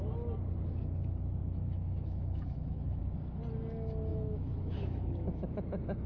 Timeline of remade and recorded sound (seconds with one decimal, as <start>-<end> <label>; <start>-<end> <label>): 0.0-1.4 recorded; 1.4-3.0 remade; 3.0-4.1 recorded; 4.1-6.1 remade